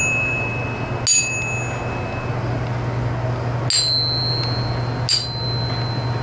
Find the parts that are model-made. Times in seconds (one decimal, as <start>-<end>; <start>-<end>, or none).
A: none